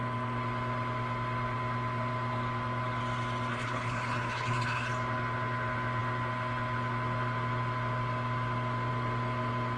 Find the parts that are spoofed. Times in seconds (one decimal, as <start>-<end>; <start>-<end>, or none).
3.5-4.9